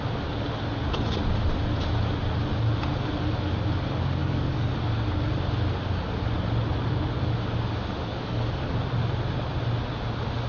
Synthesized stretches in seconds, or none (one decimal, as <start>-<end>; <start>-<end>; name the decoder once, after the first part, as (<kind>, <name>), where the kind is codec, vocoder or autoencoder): 4.2-4.7 (codec, DAC); 8.1-8.7

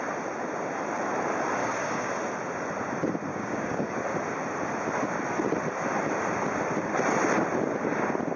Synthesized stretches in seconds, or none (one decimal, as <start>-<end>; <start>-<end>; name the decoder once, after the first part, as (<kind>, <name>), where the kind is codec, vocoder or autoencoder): 1.6-2.1 (codec, DAC); 3.3-4.0

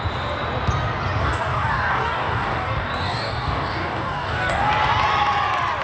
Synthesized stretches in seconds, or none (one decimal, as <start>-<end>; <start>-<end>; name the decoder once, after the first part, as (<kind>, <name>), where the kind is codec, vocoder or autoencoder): 1.2-4.7 (codec, DAC)

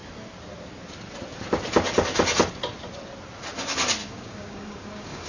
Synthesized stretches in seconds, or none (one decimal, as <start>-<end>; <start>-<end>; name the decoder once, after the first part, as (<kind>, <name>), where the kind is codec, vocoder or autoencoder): 4.0-5.3 (codec, DAC)

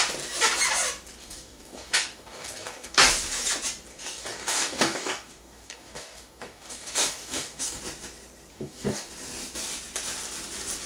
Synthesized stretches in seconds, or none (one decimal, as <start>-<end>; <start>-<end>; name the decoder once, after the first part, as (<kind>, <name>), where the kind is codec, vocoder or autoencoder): 1.2-3.1 (codec, DAC); 3.9-7.8; 8.5-9.1

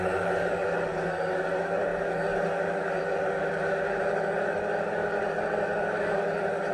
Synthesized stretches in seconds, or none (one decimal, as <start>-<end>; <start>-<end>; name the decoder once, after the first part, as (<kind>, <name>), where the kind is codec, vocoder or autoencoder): 0.0-6.7 (codec, DAC)

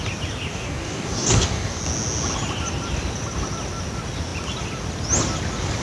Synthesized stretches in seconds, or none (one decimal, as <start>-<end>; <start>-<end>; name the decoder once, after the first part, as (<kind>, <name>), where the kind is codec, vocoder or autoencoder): 0.5-1.8 (codec, DAC)

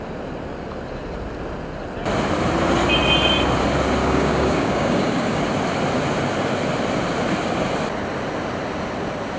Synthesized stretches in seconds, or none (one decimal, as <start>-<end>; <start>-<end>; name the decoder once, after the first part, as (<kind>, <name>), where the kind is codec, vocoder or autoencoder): 4.0-5.4 (codec, DAC)